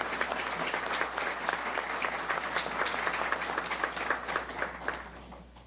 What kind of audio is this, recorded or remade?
recorded